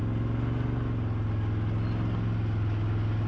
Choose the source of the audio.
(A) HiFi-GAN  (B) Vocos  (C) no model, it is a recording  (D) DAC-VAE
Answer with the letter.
C